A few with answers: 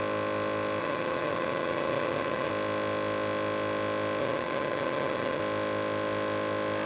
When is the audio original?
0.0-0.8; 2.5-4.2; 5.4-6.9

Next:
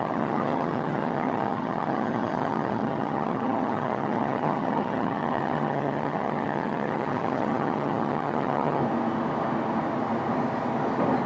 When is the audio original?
8.8-11.3

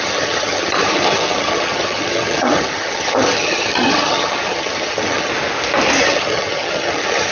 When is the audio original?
5.3-6.0

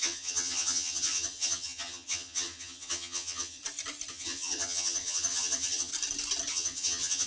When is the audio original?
3.6-4.1; 5.9-6.5

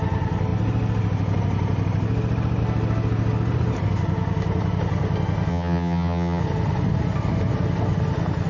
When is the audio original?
0.0-5.5; 6.4-8.5

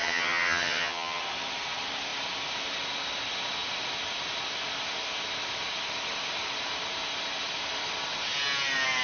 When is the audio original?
1.2-9.0